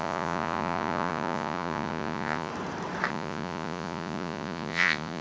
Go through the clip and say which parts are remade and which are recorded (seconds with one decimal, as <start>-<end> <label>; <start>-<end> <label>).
0.0-2.5 remade; 2.5-3.1 recorded; 3.1-5.2 remade